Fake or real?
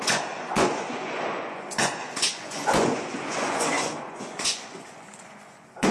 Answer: fake